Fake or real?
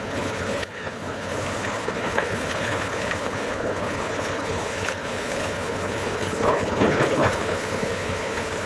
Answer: fake